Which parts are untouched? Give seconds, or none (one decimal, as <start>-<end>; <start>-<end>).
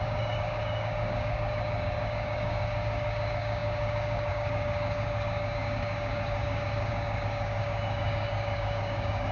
none